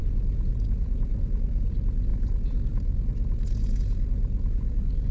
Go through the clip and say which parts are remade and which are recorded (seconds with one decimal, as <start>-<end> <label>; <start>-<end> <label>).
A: 0.0-5.1 recorded